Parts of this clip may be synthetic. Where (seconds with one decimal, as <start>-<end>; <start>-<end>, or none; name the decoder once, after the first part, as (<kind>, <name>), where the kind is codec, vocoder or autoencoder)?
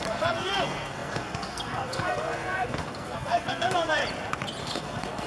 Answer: 0.0-4.0 (codec, SNAC); 4.6-5.3